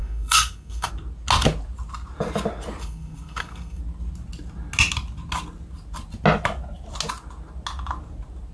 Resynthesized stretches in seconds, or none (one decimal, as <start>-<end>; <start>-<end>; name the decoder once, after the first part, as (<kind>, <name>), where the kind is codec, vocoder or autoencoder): 0.0-0.9 (codec, SNAC); 2.8-3.8